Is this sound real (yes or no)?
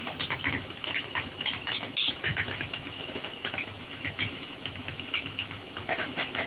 no